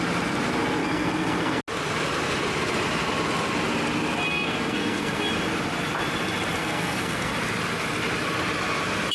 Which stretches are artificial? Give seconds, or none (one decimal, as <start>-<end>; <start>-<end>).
0.8-1.6; 4.3-5.2; 6.6-7.3